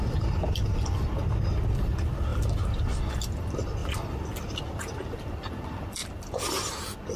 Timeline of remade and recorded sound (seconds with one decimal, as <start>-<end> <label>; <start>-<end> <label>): 0.0-7.2 recorded